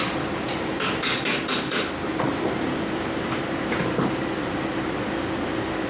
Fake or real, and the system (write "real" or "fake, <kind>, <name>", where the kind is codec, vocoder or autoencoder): fake, vocoder, BigVGAN v2